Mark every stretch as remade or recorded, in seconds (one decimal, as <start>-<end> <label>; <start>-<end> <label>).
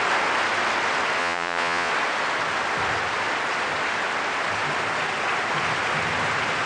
0.0-1.2 recorded; 1.2-1.9 remade; 1.9-6.7 recorded